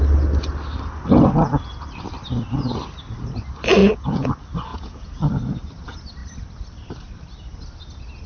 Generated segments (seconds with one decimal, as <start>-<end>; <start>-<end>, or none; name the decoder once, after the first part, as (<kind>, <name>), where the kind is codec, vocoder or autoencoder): 3.8-4.3 (vocoder, Vocos); 4.7-5.2